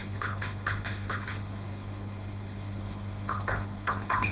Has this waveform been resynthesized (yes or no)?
yes